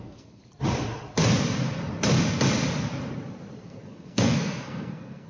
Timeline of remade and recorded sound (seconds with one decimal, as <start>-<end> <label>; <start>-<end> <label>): 0.0-0.4 remade; 0.4-3.6 recorded; 3.6-5.3 remade